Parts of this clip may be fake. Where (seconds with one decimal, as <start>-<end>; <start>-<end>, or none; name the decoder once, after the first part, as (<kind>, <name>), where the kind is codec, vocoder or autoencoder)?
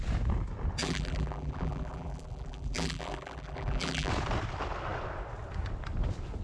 0.8-4.1 (vocoder, BigVGAN v2)